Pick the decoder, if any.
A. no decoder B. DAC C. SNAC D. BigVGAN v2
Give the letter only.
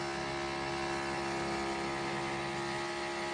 A